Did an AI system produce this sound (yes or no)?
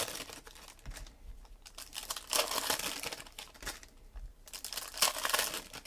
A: no